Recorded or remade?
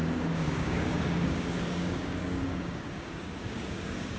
remade